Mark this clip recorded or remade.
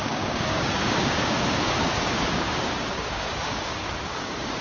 remade